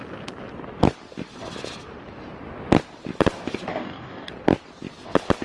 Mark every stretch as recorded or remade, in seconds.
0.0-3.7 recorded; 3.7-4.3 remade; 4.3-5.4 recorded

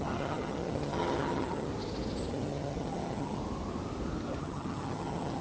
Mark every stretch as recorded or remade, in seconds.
0.0-1.7 remade; 1.7-2.3 recorded; 2.3-3.4 remade; 3.4-4.4 recorded; 4.4-5.4 remade

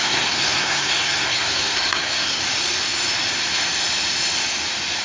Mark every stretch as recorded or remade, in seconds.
0.0-2.4 remade; 2.4-5.0 recorded

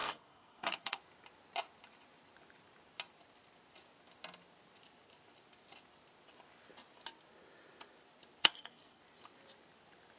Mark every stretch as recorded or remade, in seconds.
0.0-1.0 remade; 1.0-8.4 recorded; 8.4-9.0 remade; 9.0-10.2 recorded

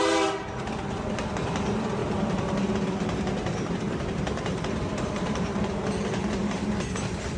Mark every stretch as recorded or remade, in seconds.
0.0-2.0 recorded; 2.0-5.8 remade; 5.8-7.4 recorded

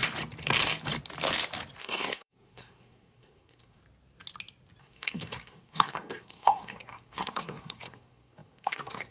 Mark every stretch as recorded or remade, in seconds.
0.0-1.8 recorded; 1.8-3.8 remade; 3.8-4.8 recorded; 4.8-9.1 remade

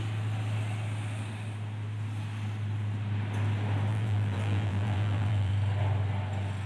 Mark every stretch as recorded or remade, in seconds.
0.0-3.9 recorded; 3.9-5.5 remade; 5.5-6.7 recorded

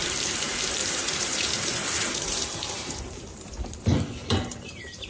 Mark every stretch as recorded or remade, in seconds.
0.0-0.8 recorded; 0.8-3.5 remade; 3.5-4.2 recorded; 4.2-5.1 remade